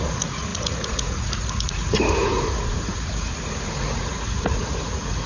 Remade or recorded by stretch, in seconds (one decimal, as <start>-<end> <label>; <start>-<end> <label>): 0.0-5.3 remade